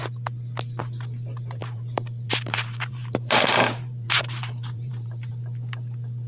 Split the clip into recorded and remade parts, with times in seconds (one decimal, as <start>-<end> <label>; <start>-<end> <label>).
0.0-1.6 recorded; 1.6-5.3 remade; 5.3-6.3 recorded